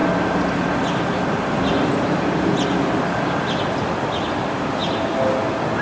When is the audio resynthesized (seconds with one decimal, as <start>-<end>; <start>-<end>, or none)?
none